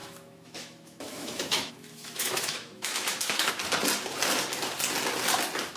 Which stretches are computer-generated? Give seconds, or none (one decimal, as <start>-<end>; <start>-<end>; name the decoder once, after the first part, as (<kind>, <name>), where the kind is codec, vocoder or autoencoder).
0.0-3.5 (autoencoder, DAC-VAE)